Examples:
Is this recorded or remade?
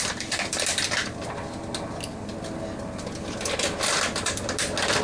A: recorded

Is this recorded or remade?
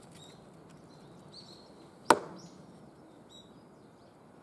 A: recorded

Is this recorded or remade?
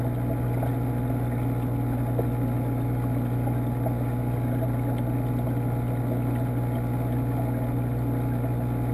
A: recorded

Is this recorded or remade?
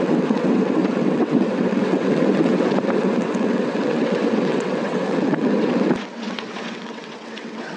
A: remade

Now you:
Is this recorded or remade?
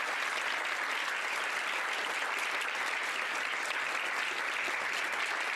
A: recorded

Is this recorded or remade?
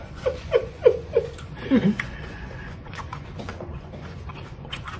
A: remade